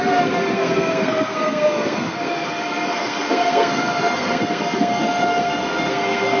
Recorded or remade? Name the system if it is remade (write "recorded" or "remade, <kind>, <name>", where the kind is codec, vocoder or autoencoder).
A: remade, codec, SNAC